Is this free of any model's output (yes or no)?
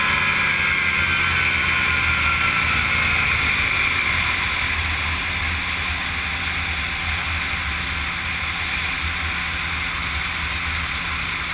yes